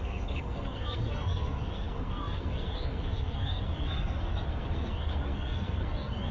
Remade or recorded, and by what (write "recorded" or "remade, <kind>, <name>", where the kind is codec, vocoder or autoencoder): remade, codec, SNAC